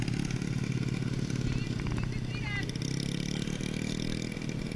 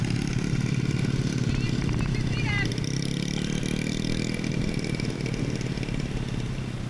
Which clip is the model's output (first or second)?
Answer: second